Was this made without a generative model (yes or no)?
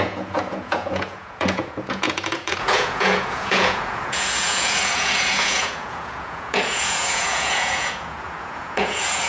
no